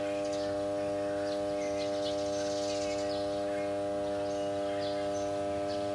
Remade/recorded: recorded